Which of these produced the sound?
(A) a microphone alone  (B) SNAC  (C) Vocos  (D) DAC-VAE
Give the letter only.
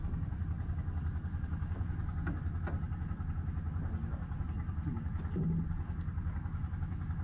A